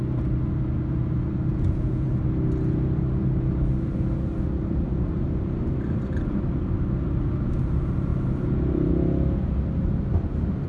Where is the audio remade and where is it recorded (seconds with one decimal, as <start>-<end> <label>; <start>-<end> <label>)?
0.0-1.5 recorded; 1.5-2.1 remade; 2.1-10.7 recorded